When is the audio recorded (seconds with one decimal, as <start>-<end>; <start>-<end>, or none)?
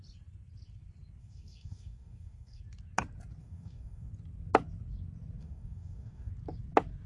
0.0-1.2; 2.6-3.4; 4.1-5.4; 6.3-7.1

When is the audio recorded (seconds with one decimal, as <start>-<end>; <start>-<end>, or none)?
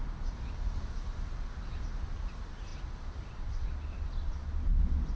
0.0-5.2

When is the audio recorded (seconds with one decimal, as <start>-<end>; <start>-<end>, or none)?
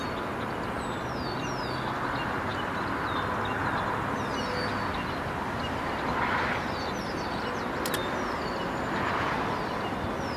0.0-10.4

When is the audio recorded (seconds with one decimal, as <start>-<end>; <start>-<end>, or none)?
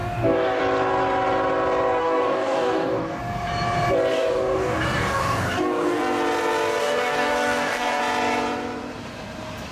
0.6-2.0; 3.2-4.1; 6.0-6.8; 8.0-9.7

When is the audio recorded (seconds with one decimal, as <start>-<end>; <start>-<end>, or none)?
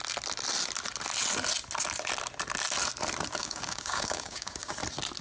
0.0-3.4; 4.7-5.2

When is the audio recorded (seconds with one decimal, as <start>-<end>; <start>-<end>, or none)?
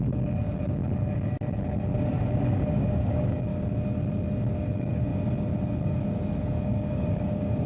0.8-2.1; 3.5-4.5; 5.1-5.8